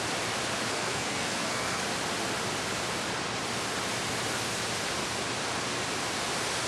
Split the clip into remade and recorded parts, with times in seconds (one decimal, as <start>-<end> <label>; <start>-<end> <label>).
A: 0.0-0.7 recorded; 0.7-1.8 remade; 1.8-6.7 recorded